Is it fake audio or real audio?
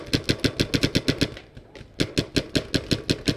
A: real